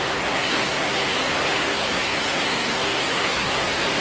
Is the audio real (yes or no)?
no